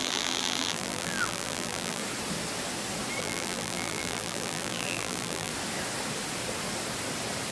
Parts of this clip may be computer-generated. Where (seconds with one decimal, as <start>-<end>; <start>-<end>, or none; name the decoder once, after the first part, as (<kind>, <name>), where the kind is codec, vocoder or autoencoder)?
0.0-2.0 (vocoder, BigVGAN v2); 3.2-5.5